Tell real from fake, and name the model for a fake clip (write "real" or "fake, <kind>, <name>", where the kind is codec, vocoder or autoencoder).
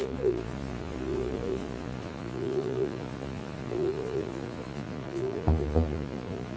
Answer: fake, vocoder, Vocos